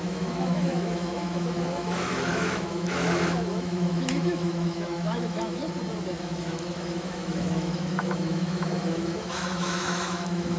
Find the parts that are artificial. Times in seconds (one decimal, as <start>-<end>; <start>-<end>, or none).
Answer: 0.0-5.6; 6.2-10.6